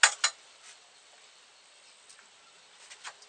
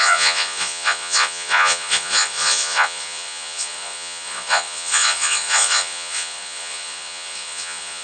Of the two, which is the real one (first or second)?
first